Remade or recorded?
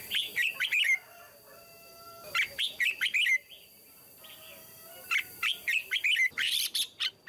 remade